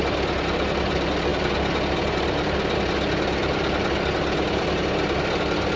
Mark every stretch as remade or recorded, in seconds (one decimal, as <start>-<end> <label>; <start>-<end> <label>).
0.0-5.8 recorded